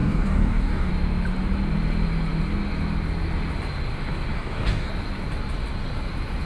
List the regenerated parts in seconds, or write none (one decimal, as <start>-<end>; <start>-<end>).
0.0-0.9; 4.3-4.9